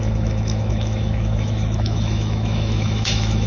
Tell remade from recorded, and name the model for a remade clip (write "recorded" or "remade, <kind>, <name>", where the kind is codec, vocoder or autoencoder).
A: remade, autoencoder, DAC-VAE